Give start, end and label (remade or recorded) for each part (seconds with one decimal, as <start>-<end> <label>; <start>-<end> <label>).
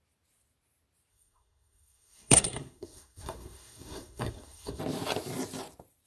0.0-1.1 recorded; 1.1-4.8 remade; 4.8-6.1 recorded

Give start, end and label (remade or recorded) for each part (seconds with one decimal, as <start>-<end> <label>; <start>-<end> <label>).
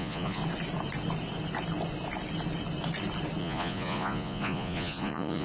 0.0-0.4 remade; 0.4-3.4 recorded; 3.4-5.4 remade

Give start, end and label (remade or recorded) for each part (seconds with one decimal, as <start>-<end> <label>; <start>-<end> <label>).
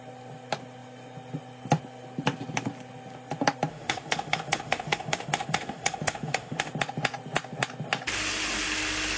0.0-3.7 recorded; 3.7-6.7 remade; 6.7-9.2 recorded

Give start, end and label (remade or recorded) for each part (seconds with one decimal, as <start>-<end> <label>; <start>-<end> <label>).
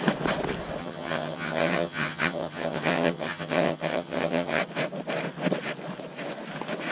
0.0-0.8 recorded; 0.8-4.6 remade; 4.6-6.9 recorded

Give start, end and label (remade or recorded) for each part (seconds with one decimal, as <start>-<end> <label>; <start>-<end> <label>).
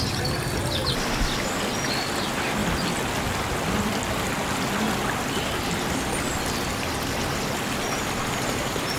0.0-9.0 recorded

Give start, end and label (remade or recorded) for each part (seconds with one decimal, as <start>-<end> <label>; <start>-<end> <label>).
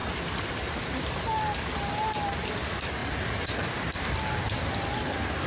0.0-5.5 recorded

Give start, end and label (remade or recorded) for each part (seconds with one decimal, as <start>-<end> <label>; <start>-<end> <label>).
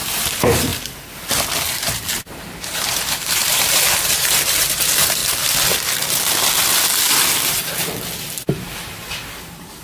0.0-0.7 remade; 0.7-2.6 recorded; 2.6-5.2 remade; 5.2-8.5 recorded; 8.5-9.8 remade